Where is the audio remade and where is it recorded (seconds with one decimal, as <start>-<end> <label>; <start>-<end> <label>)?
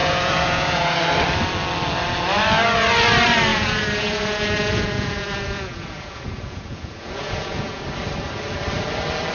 0.0-1.0 remade; 1.0-3.5 recorded; 3.5-7.8 remade; 7.8-9.3 recorded